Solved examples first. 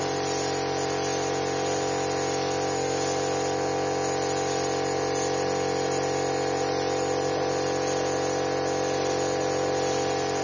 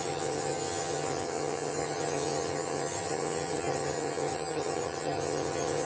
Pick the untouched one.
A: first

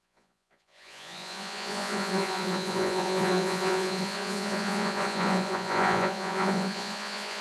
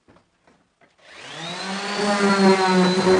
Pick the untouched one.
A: second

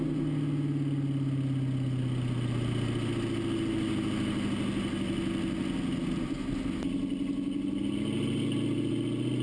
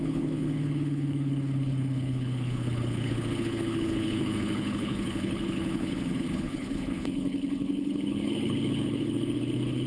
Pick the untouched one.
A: first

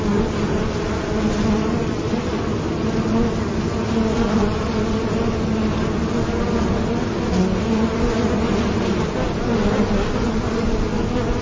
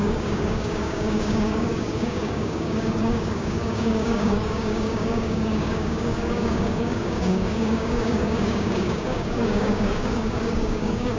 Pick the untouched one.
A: first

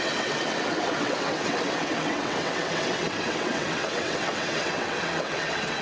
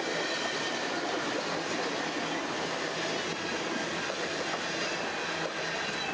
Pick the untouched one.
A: second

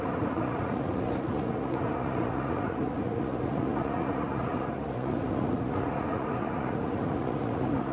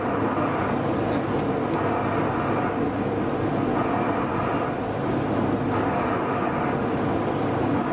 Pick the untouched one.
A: second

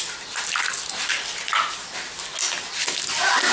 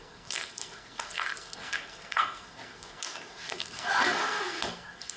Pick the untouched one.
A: first